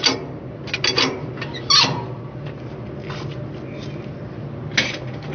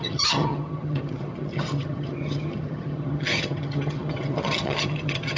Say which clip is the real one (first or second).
first